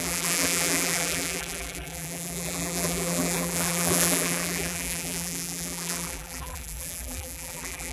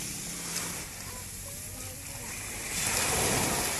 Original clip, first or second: second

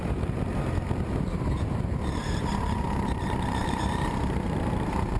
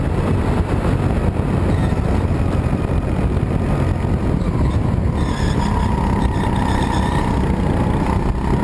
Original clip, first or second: second